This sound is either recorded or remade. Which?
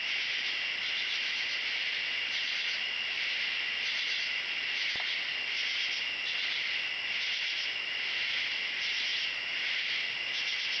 recorded